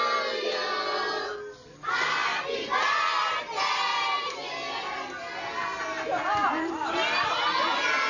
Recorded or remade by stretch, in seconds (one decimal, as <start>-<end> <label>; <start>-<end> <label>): 0.0-8.1 recorded